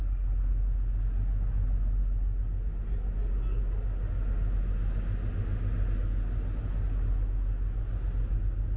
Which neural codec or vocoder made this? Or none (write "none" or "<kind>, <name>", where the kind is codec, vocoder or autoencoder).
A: none